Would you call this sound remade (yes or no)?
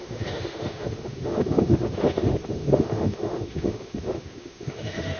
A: yes